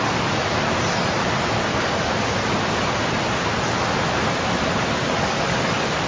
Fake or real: real